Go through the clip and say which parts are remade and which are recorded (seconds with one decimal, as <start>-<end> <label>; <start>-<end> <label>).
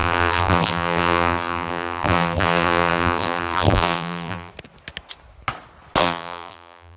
0.0-4.5 remade; 4.5-6.0 recorded; 6.0-7.0 remade